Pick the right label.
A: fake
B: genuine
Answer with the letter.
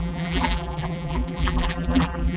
A